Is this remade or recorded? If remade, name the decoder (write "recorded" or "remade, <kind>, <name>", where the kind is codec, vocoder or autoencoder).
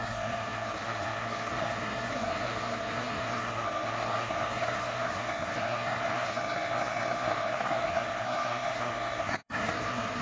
remade, codec, SNAC